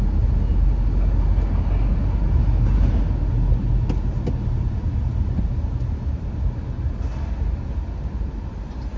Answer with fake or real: real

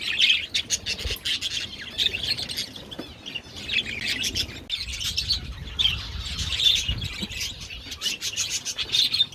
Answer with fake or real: real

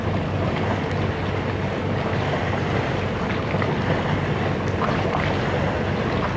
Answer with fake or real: real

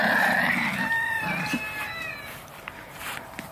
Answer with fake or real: real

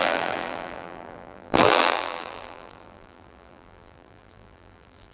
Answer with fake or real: fake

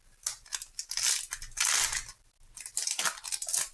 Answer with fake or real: real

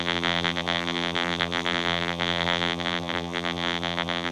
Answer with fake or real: fake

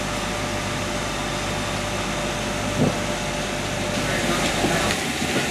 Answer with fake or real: real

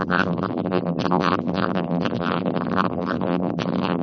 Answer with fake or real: fake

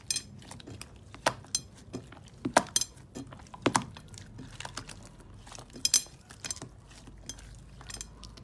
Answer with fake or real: real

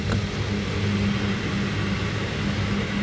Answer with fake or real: real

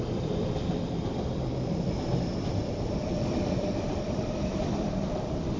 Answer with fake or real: fake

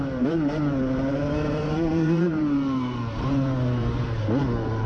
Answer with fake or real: fake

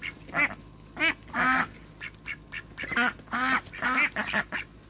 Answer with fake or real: real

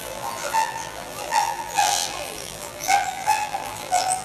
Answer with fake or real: fake